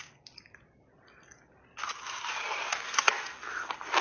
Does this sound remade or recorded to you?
recorded